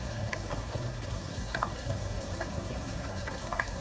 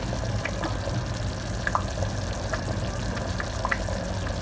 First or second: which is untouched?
second